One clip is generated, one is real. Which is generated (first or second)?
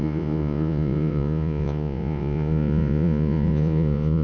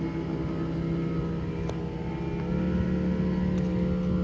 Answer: first